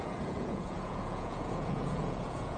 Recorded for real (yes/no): no